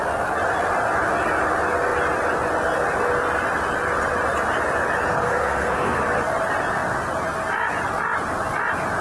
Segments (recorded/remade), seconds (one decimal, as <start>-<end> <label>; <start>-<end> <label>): 0.0-5.1 recorded; 5.1-6.0 remade; 6.0-9.0 recorded